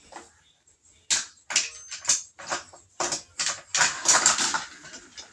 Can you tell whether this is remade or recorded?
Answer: recorded